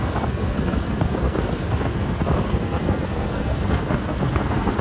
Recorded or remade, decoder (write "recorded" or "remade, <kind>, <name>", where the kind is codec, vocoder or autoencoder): remade, codec, SNAC